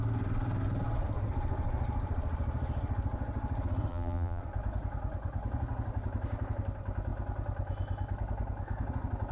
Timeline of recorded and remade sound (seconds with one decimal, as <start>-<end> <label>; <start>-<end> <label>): 0.0-3.9 recorded; 3.9-4.4 remade; 4.4-9.3 recorded